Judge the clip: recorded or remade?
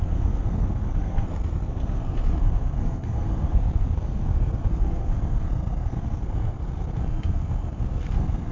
remade